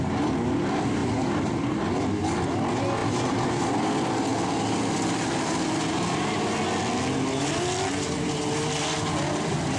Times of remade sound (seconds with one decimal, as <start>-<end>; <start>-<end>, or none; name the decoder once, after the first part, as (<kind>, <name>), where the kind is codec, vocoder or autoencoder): 1.0-1.8 (vocoder, BigVGAN v2); 3.0-3.7